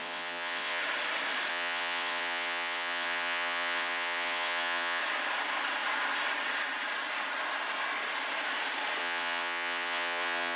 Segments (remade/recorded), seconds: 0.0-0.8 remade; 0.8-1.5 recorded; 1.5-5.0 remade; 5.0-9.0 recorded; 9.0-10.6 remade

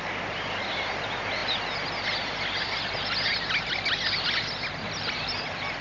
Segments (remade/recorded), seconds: 0.0-5.8 recorded

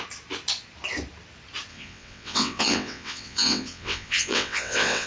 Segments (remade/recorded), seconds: 0.0-1.7 recorded; 1.7-5.1 remade

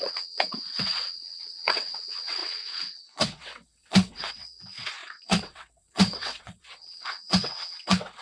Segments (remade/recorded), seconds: 0.0-8.2 remade

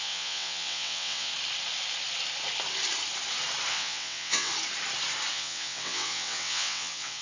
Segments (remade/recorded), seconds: 0.0-1.3 remade; 1.3-3.7 recorded; 3.7-4.5 remade; 4.5-5.3 recorded; 5.3-7.2 remade

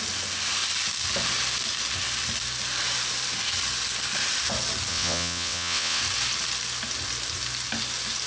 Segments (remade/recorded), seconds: 0.0-4.9 recorded; 4.9-6.0 remade; 6.0-8.3 recorded